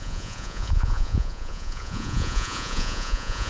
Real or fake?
fake